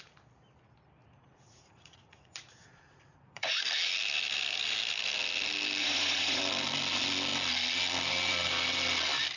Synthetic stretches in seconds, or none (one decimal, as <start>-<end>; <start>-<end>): 1.0-3.5; 5.8-6.4